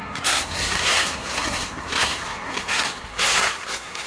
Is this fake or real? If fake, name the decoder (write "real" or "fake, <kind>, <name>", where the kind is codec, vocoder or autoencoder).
fake, codec, SNAC